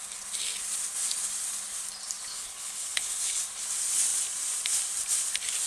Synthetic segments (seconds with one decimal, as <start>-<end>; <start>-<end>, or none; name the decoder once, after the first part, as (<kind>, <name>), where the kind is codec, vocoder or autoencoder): 2.3-3.4 (codec, HILCodec)